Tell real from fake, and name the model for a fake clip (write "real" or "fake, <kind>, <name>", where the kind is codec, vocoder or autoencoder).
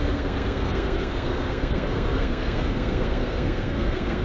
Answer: fake, codec, SNAC